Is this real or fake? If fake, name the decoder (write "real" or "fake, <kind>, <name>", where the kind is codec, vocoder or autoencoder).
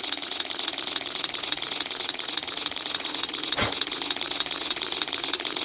fake, vocoder, Vocos